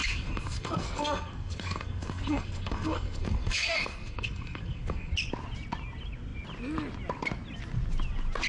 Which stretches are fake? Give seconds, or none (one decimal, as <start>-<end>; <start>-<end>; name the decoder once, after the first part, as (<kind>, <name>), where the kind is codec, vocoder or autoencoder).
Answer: 0.0-5.1 (codec, SNAC)

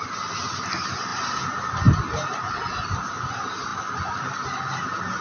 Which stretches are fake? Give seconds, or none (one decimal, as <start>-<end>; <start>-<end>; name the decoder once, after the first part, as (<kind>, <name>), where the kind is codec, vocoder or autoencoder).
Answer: none

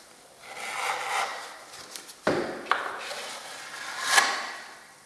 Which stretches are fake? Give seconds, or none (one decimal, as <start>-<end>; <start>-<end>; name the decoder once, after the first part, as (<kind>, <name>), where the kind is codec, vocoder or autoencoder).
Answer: none

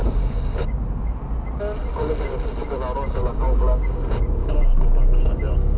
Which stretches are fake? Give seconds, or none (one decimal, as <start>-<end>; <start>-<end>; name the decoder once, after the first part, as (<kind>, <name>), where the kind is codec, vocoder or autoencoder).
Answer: 0.0-0.8 (codec, DAC); 3.2-5.3